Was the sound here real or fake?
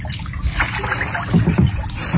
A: real